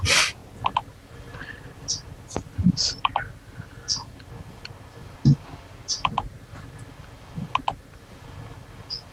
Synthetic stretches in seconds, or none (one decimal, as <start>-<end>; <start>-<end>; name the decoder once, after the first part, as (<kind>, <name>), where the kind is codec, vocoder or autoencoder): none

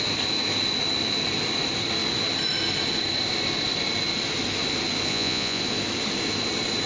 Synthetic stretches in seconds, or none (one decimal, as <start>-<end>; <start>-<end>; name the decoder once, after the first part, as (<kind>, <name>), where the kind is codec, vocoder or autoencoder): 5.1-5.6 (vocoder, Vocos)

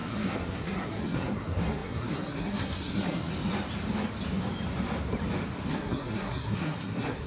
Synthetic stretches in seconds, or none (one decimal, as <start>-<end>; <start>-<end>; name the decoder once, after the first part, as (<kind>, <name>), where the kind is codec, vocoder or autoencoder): 0.0-3.3 (codec, SNAC); 5.7-7.3

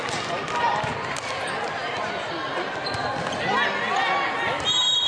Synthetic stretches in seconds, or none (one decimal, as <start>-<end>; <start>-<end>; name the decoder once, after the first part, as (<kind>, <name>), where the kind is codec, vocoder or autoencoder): none

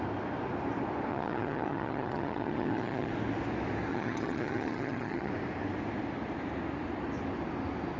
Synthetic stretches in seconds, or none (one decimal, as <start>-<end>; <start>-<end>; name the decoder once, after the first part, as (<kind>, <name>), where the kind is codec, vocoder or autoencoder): 1.1-3.1 (vocoder, HiFi-GAN); 3.9-5.3

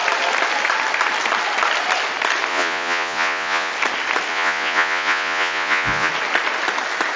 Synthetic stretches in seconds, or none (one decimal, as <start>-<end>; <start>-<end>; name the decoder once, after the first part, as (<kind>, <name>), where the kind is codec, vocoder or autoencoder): 2.5-3.7 (vocoder, Vocos); 4.3-6.1

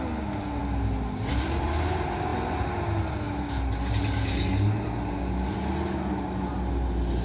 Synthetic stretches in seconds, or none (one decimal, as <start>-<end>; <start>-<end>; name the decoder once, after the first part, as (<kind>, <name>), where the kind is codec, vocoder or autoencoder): none